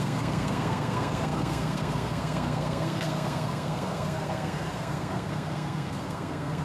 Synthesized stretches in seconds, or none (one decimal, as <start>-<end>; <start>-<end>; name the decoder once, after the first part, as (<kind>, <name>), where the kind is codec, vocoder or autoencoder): 0.0-6.6 (codec, SNAC)